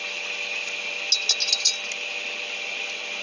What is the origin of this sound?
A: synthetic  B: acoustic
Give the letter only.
B